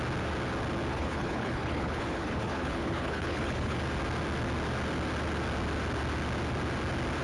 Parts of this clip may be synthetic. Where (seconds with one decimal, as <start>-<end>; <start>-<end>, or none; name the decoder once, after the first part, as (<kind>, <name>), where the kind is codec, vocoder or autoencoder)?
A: 0.9-3.8 (codec, HILCodec)